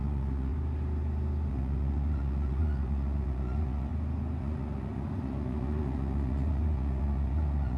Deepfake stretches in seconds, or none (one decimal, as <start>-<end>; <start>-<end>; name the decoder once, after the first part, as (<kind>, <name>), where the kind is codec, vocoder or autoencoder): 0.0-0.5 (vocoder, Vocos); 1.5-3.9; 4.4-7.8